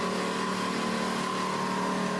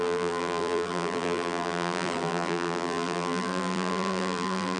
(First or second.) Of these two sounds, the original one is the first